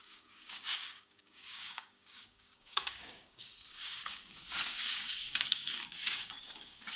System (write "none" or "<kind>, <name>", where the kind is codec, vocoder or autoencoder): codec, DAC